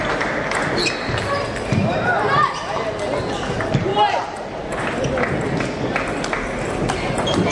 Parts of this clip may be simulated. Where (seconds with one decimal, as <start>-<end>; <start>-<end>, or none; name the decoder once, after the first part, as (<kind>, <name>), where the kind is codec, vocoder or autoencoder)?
none